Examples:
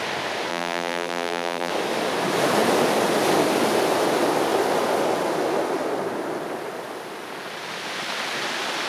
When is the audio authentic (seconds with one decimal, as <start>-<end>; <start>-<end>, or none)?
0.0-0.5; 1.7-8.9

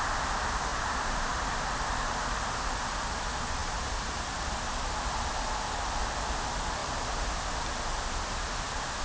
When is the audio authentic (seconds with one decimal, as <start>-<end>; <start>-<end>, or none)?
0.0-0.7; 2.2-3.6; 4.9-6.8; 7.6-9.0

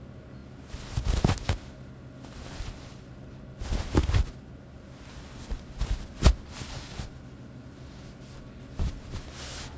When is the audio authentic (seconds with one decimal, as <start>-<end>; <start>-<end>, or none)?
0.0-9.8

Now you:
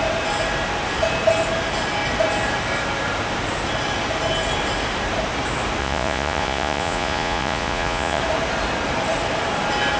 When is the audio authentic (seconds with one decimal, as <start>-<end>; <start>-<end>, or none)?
0.0-5.8; 8.2-10.0

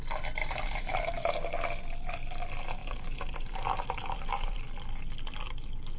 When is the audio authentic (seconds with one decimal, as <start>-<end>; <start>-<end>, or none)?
0.0-0.4; 1.3-2.8; 4.6-6.0

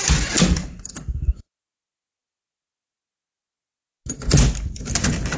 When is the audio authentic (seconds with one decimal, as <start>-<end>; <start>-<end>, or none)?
0.0-5.4

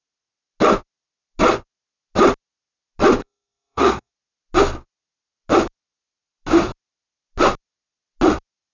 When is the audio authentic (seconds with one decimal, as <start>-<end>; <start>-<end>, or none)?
0.0-3.2; 4.1-8.7